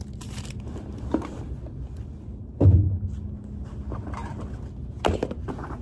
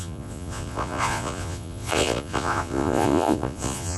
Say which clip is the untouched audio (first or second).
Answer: first